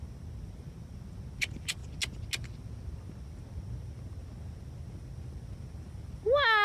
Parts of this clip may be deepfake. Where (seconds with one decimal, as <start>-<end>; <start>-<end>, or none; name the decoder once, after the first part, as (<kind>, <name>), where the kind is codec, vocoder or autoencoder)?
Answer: none